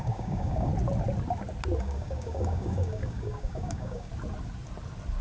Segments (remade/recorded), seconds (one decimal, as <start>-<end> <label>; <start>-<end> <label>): 0.0-0.7 remade; 0.7-1.8 recorded; 1.8-4.1 remade; 4.1-5.2 recorded